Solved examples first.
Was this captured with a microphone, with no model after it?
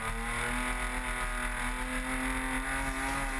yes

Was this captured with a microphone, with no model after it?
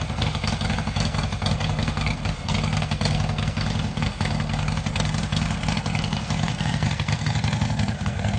no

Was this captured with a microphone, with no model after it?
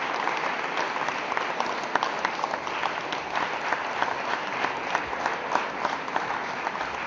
yes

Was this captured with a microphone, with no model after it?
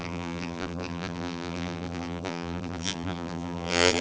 no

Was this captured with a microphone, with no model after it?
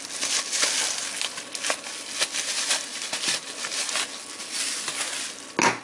yes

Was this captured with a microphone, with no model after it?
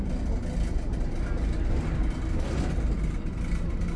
yes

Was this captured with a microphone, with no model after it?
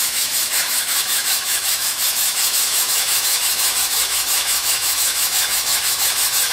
no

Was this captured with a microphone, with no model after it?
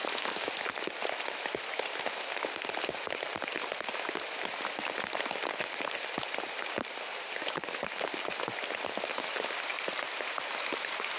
yes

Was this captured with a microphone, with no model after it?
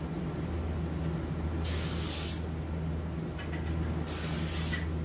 yes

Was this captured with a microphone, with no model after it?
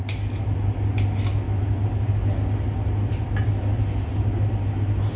yes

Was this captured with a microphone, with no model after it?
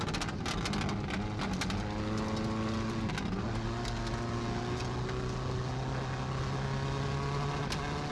yes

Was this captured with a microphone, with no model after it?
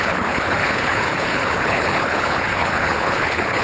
no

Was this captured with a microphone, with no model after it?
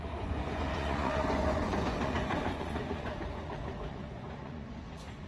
no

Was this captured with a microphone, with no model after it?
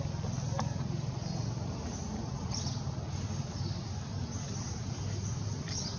yes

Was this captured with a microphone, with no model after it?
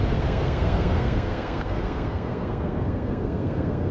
no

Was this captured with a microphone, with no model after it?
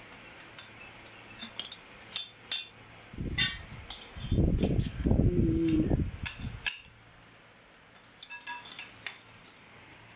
yes